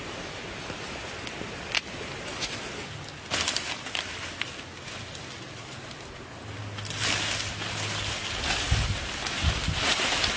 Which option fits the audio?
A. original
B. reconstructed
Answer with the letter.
A